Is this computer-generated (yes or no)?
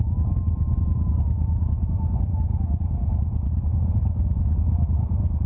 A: yes